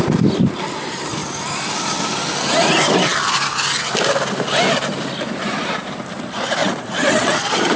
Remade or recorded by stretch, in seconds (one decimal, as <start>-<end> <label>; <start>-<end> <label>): 0.0-6.6 recorded; 6.6-7.8 remade